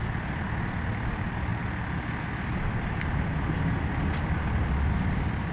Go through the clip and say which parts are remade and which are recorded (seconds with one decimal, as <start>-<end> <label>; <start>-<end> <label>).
0.0-1.5 remade; 1.5-2.2 recorded; 2.2-3.3 remade; 3.3-4.9 recorded; 4.9-5.5 remade